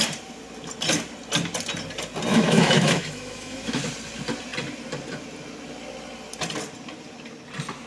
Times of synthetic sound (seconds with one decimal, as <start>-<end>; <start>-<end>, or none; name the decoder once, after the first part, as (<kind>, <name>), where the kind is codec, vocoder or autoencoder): 2.3-3.8 (autoencoder, DAC-VAE)

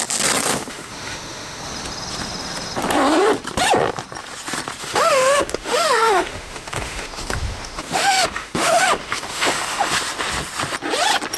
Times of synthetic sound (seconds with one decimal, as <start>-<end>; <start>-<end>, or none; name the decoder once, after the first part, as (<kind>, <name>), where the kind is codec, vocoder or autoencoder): 0.5-1.6 (autoencoder, DAC-VAE); 4.8-9.9

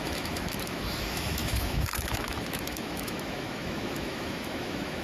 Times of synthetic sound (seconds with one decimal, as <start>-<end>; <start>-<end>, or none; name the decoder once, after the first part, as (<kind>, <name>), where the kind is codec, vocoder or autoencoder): 0.0-5.0 (autoencoder, DAC-VAE)

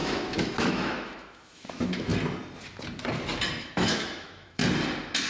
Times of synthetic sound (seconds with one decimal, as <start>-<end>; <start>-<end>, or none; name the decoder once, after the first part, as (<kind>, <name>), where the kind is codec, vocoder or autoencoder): 0.0-2.1 (autoencoder, DAC-VAE); 3.6-4.6

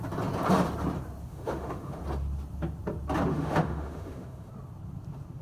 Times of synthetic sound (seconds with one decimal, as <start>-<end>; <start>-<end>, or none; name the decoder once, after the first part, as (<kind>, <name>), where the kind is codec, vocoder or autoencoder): 1.3-2.0 (autoencoder, DAC-VAE); 3.3-4.5

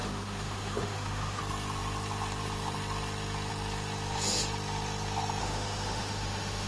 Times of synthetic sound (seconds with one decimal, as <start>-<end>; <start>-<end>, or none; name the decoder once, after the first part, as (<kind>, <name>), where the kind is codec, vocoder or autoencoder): 0.0-1.4 (autoencoder, DAC-VAE); 5.4-6.7

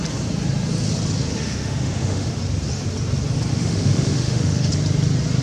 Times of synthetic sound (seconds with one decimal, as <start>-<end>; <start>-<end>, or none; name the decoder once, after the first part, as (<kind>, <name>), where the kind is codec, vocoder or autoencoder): 1.3-2.4 (autoencoder, DAC-VAE); 3.5-4.7